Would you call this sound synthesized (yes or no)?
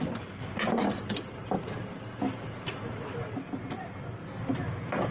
no